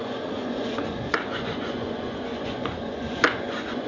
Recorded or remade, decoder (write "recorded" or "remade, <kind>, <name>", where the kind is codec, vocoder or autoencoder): remade, vocoder, Vocos